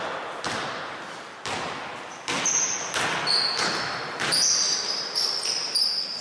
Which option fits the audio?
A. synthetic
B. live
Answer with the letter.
B